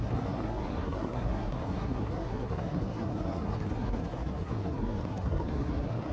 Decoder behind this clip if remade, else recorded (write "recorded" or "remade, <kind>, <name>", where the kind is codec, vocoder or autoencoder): remade, codec, SNAC